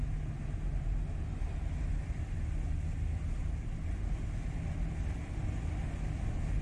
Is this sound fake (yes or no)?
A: no